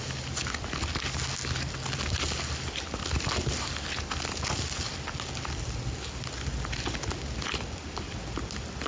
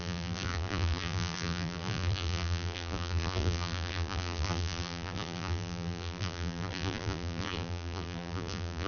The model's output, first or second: second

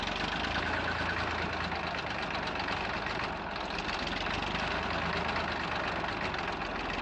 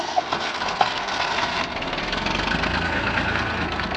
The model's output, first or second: second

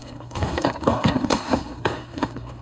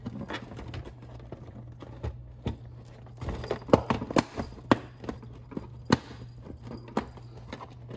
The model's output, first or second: first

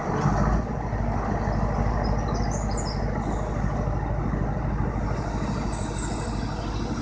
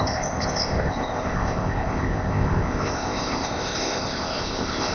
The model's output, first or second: second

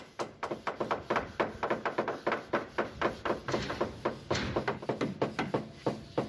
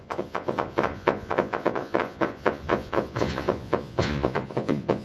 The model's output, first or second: second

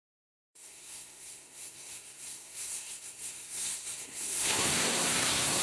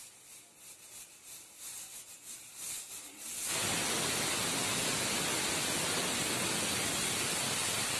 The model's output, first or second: first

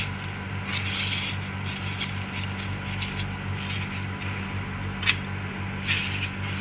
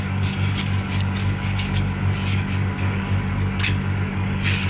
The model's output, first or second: second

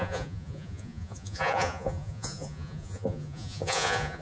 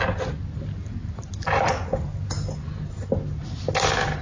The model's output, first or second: first